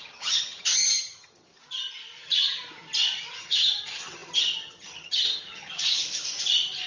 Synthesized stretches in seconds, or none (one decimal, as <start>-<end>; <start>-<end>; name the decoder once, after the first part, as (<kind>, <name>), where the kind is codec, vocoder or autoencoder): 0.0-1.5 (vocoder, HiFi-GAN); 3.4-5.8